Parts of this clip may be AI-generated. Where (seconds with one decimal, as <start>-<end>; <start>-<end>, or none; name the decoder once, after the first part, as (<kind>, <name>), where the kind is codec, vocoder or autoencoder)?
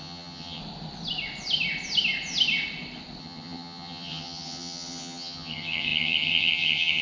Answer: 0.0-0.6 (vocoder, HiFi-GAN); 3.2-7.0